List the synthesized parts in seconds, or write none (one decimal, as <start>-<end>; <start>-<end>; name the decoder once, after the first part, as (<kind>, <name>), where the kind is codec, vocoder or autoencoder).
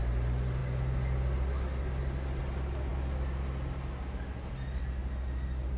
none